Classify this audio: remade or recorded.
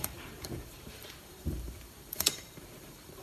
remade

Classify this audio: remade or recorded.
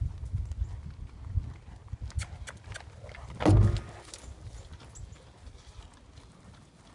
recorded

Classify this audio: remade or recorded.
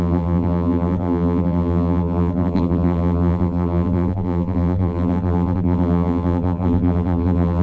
remade